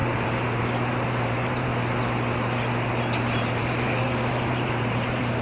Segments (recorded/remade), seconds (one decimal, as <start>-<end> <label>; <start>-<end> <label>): 0.0-1.7 remade; 1.7-3.2 recorded; 3.2-5.4 remade